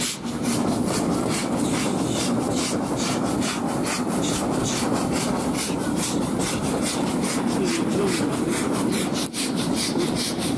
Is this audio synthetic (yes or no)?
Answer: no